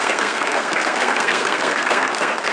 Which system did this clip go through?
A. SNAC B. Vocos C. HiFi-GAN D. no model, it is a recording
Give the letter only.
A